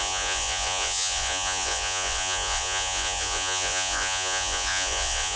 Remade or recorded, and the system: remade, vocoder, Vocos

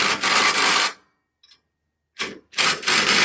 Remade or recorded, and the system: recorded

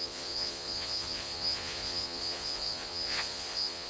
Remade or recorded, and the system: remade, vocoder, Vocos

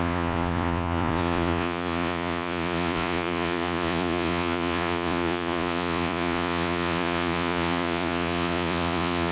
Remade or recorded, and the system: remade, vocoder, Vocos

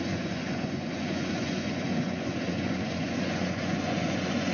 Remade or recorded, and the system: remade, vocoder, Vocos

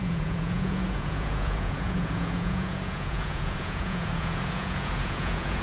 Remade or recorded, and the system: remade, vocoder, Vocos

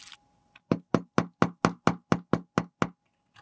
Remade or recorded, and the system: recorded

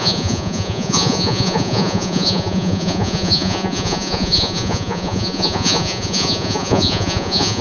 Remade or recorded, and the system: remade, vocoder, Vocos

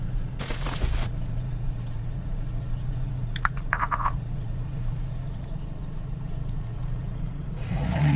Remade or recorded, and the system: remade, vocoder, Vocos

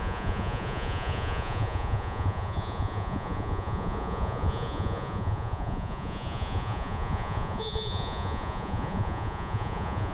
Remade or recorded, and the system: remade, vocoder, Vocos